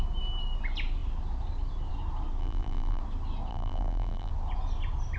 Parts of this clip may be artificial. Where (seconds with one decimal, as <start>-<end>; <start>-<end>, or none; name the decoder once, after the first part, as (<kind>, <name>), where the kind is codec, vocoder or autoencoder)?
2.4-3.0 (vocoder, BigVGAN v2); 3.5-4.3